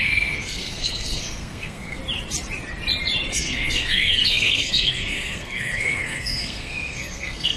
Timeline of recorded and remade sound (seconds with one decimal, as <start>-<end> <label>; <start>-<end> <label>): 0.0-2.0 remade; 2.0-3.3 recorded; 3.3-7.6 remade